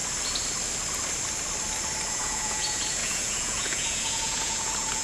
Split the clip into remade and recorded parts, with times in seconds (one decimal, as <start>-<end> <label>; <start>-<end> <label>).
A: 0.0-2.1 recorded; 2.1-5.0 remade